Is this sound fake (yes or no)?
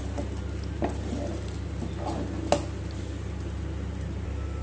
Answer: no